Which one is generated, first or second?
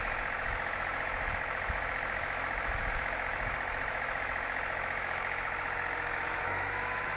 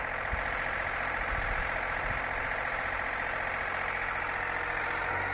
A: first